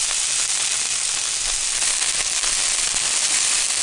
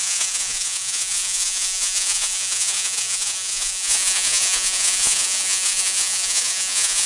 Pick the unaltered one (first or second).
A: first